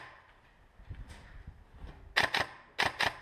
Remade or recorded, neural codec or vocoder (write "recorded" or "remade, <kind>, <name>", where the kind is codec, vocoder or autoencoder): recorded